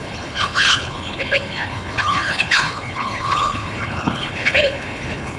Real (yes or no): no